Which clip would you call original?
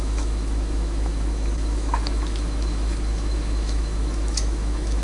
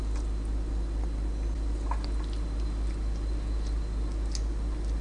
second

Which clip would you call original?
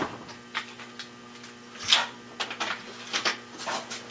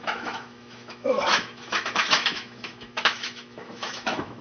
first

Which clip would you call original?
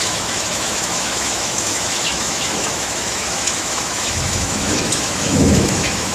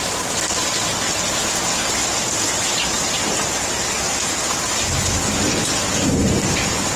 second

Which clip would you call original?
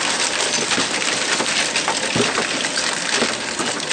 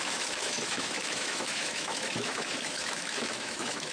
first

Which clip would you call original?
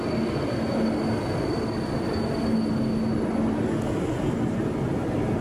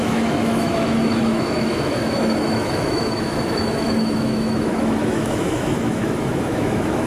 first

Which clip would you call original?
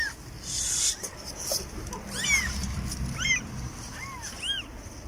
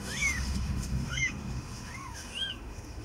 first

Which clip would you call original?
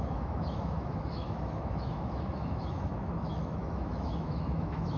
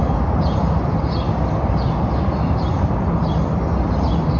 second